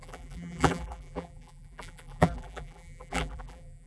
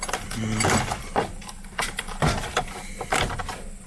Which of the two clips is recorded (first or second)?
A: second